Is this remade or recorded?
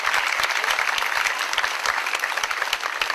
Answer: recorded